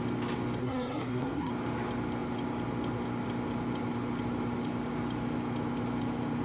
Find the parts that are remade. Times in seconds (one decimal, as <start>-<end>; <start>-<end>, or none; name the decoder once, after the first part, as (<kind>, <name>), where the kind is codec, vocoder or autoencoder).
0.6-1.5 (codec, SNAC)